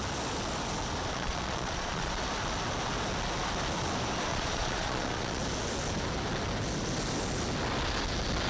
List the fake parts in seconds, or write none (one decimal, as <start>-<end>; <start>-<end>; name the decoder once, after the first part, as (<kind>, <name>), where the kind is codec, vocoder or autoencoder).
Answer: 1.1-2.1 (vocoder, Vocos); 4.3-5.4